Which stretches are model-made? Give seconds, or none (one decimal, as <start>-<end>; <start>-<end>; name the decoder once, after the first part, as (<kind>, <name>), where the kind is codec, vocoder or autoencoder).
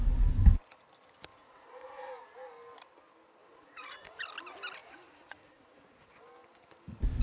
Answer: 1.3-2.1 (vocoder, Vocos); 3.4-4.2; 4.8-6.1